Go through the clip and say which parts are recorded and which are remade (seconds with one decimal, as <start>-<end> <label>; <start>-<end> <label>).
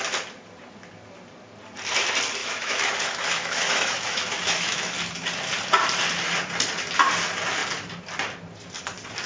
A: 0.0-2.4 recorded; 2.4-4.9 remade; 4.9-9.3 recorded